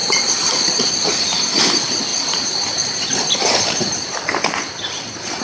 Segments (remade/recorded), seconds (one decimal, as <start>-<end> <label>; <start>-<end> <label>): 0.0-5.4 recorded